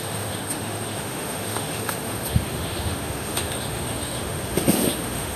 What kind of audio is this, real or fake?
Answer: fake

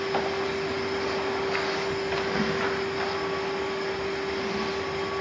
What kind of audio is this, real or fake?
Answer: real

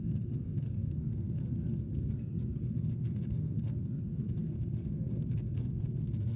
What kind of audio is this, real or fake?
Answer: fake